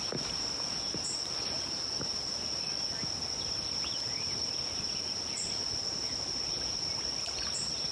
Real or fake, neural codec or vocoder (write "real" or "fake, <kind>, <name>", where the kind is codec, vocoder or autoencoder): real